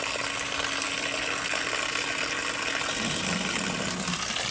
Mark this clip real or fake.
real